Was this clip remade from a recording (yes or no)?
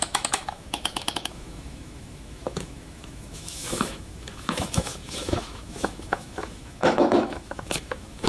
yes